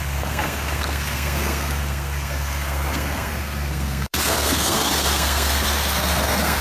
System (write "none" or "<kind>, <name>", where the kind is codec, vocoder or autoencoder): codec, SNAC